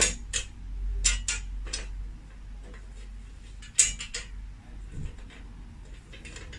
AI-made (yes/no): no